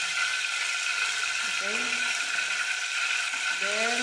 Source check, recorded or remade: recorded